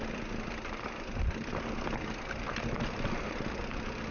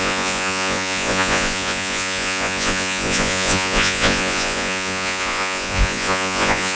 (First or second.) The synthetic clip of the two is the second